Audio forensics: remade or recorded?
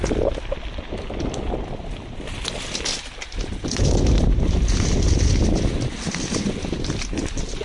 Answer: recorded